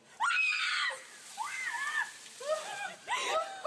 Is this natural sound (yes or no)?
yes